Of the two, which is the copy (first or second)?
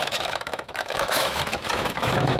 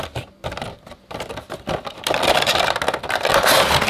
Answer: first